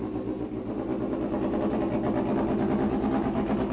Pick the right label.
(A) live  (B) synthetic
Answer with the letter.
A